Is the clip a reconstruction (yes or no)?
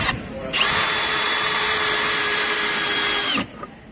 yes